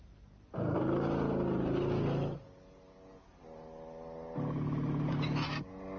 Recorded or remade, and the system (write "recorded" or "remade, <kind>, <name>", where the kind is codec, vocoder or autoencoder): recorded